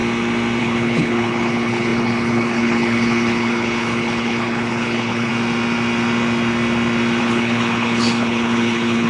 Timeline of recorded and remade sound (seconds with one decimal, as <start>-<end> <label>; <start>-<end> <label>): 0.0-0.6 recorded; 0.6-5.3 remade; 5.3-7.2 recorded; 7.2-9.1 remade